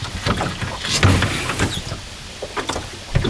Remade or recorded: recorded